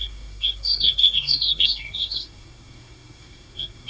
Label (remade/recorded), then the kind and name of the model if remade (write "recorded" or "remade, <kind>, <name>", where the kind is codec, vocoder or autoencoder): remade, codec, SNAC